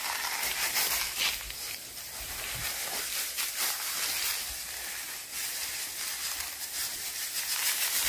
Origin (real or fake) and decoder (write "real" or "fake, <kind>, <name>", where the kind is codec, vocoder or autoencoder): real